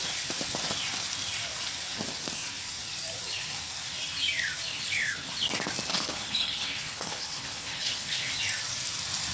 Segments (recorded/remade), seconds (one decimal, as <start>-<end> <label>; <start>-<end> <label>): 0.0-4.7 recorded; 4.7-5.3 remade; 5.3-5.9 recorded; 5.9-8.3 remade; 8.3-9.3 recorded